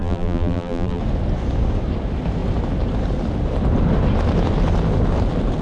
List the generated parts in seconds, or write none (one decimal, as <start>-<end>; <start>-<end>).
0.0-1.0